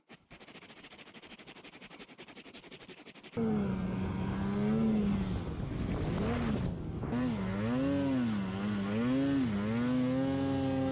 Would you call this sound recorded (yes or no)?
yes